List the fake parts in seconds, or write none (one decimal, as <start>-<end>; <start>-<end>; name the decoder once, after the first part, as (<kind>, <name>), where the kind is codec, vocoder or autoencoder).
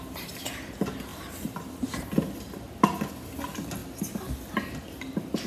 1.1-1.7 (vocoder, BigVGAN v2)